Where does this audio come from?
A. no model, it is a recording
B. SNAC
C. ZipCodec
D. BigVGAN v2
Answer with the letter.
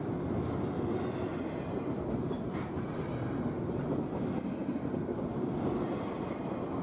A